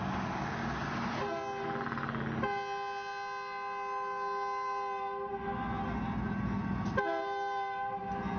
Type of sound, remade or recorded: recorded